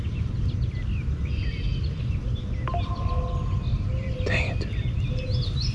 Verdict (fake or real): real